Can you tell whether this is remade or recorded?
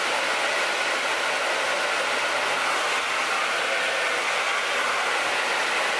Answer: recorded